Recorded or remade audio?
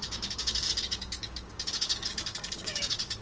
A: remade